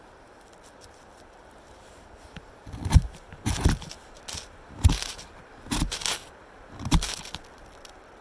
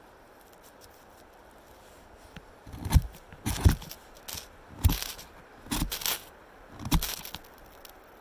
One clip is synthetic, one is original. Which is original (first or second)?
second